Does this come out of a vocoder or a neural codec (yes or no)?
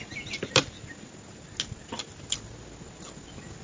no